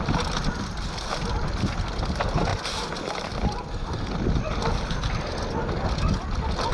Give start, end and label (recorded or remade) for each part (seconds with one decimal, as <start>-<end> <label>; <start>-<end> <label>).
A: 0.0-6.7 recorded